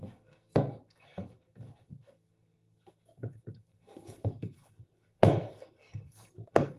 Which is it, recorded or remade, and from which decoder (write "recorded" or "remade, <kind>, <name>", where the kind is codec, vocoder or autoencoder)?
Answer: remade, codec, SNAC